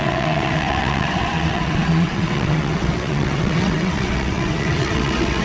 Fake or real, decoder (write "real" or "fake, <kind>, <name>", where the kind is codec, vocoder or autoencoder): fake, vocoder, WaveNeXt